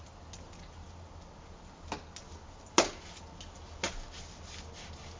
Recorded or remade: recorded